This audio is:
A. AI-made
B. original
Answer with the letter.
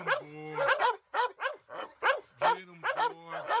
B